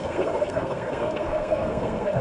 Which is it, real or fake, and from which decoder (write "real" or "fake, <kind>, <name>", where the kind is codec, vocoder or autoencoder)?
fake, codec, SNAC